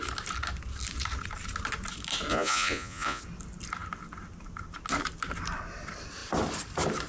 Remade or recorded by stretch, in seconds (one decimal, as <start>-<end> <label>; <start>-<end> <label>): 0.0-2.3 recorded; 2.3-3.2 remade; 3.2-7.1 recorded